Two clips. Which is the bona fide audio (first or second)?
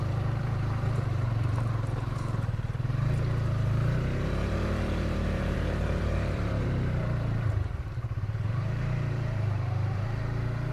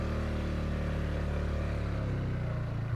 second